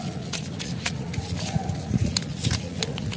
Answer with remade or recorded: remade